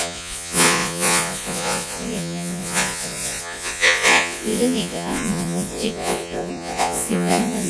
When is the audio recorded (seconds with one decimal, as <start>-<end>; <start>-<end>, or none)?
none